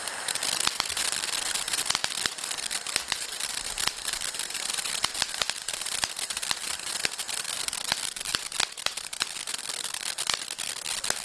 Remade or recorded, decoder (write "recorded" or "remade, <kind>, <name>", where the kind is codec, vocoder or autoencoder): recorded